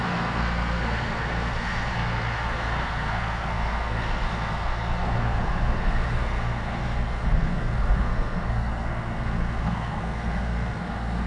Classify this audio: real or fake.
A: fake